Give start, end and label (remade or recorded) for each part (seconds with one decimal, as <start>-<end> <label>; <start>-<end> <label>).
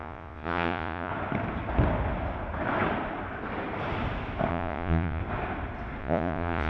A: 0.0-1.1 remade; 1.1-4.5 recorded; 4.5-5.2 remade; 5.2-6.0 recorded; 6.0-6.7 remade